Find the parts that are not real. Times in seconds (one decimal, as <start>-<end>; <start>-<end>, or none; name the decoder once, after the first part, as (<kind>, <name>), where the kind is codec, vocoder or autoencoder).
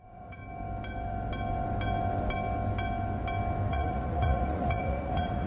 0.0-0.4 (vocoder, Vocos); 3.7-5.5